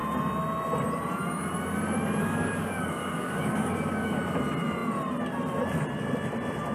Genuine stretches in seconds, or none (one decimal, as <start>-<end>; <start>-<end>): 0.0-2.2; 4.2-6.7